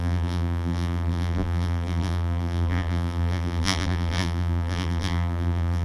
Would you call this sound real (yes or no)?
no